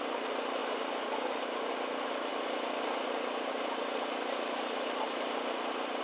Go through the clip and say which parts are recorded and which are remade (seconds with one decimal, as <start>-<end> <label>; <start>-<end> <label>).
0.0-6.0 recorded